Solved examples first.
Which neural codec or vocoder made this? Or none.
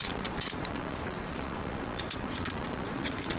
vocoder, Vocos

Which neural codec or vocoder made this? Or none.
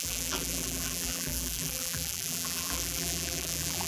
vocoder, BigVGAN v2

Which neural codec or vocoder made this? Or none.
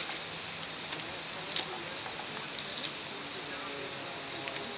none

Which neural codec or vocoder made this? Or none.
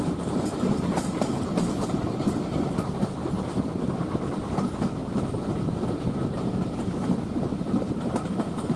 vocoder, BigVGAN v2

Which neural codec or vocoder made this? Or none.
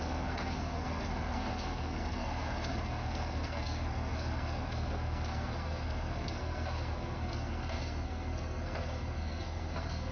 codec, SNAC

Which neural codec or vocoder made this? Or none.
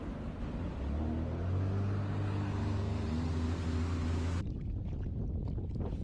none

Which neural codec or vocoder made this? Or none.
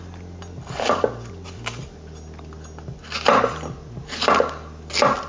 none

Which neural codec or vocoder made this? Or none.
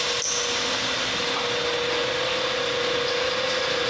none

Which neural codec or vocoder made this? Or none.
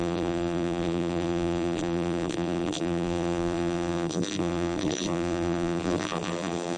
vocoder, BigVGAN v2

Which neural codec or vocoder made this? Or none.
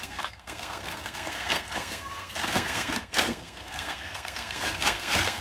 codec, SNAC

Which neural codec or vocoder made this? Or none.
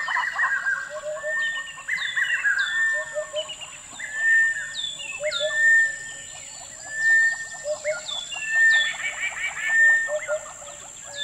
none